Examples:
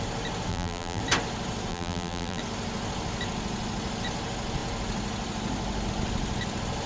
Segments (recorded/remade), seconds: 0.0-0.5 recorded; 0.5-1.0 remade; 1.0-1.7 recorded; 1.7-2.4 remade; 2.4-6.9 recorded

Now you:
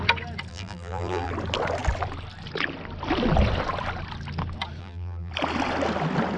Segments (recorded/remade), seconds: 0.0-0.5 recorded; 0.5-1.3 remade; 1.3-4.8 recorded; 4.8-5.3 remade; 5.3-6.4 recorded